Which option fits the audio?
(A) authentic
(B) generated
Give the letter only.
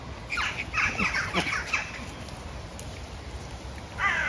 A